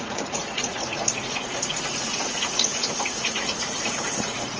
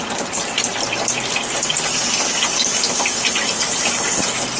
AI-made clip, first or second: first